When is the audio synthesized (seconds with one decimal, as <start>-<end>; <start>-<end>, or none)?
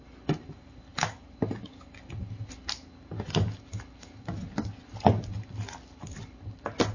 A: none